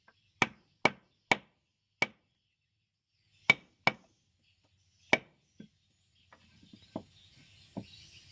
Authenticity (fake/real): real